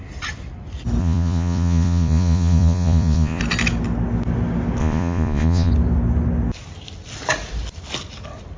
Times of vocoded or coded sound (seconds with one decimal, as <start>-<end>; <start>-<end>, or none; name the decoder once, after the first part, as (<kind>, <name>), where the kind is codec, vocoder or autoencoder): 1.0-3.4 (vocoder, Vocos); 4.8-5.7

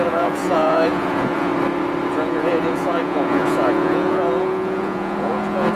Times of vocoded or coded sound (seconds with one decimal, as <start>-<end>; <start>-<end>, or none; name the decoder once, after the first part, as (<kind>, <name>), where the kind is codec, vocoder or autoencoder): 0.0-1.5 (vocoder, Vocos); 2.1-5.8

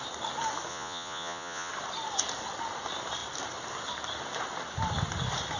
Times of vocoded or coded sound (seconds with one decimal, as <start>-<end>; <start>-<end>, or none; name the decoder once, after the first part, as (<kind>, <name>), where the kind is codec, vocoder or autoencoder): 0.7-1.7 (vocoder, Vocos)

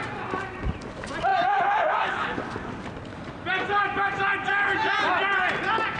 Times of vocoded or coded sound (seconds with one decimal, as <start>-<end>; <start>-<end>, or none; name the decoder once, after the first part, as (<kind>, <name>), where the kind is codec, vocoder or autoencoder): none

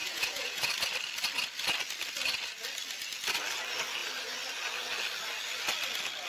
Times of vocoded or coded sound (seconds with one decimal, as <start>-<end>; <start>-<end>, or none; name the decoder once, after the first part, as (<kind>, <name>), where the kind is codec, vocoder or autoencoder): 0.0-0.7 (vocoder, Vocos)

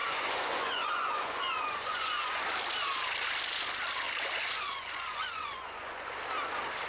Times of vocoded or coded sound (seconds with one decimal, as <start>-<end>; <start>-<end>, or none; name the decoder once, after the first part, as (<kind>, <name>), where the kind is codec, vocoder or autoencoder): 0.0-2.4 (vocoder, Vocos); 4.4-6.1